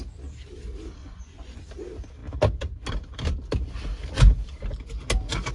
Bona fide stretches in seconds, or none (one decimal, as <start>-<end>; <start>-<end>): 0.0-1.0; 1.6-5.5